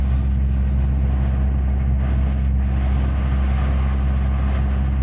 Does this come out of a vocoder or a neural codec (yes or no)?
no